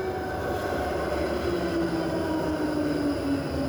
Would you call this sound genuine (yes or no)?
yes